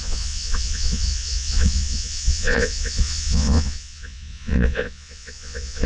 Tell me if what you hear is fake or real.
fake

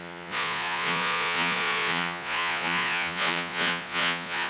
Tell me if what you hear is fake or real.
fake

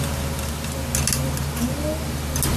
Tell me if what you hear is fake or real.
real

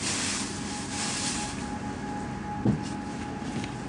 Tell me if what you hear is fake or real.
real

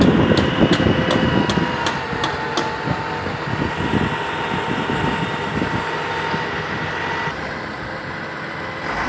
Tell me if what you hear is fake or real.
real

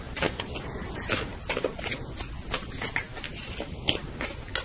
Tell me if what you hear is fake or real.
real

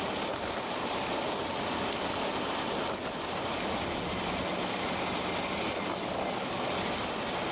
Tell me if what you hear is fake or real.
real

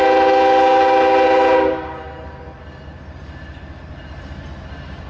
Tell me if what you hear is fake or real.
real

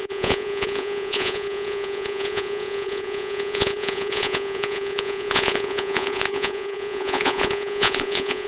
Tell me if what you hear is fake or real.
fake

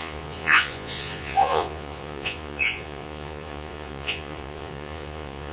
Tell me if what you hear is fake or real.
fake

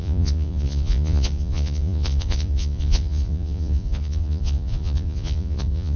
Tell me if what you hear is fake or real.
fake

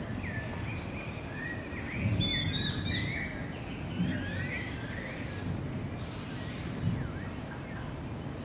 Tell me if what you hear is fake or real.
real